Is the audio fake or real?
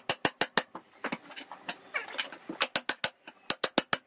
real